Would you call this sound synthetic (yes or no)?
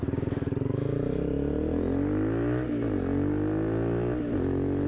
no